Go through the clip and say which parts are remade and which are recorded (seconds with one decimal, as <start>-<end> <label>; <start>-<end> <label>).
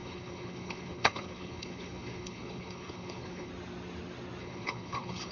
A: 0.0-3.5 remade; 3.5-4.4 recorded; 4.4-5.3 remade